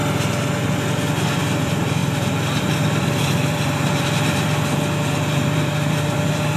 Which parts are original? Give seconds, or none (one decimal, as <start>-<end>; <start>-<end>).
0.0-1.6; 2.0-2.6